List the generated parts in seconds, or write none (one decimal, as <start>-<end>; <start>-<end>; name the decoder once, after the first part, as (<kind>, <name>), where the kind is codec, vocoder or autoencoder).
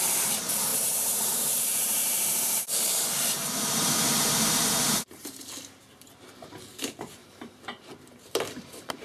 0.0-9.0 (vocoder, BigVGAN v2)